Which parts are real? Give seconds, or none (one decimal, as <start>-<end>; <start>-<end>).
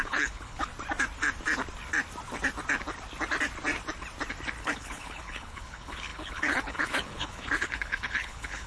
0.7-4.6